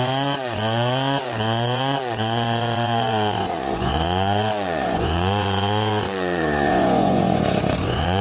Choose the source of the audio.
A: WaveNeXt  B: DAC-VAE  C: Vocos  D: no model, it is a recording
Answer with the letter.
C